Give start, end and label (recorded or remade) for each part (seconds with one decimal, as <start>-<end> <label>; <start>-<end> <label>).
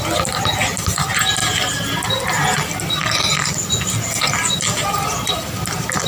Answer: 0.0-6.1 recorded